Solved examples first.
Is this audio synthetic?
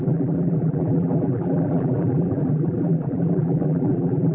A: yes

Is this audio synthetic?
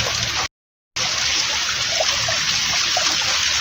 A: no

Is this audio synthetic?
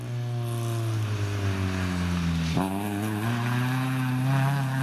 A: no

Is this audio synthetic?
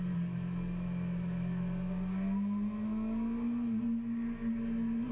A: no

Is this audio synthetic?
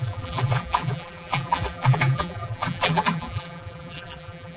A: yes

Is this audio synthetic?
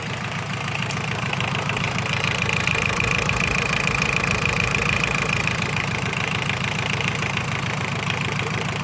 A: yes